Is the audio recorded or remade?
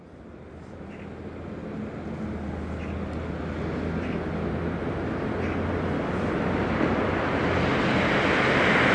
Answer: recorded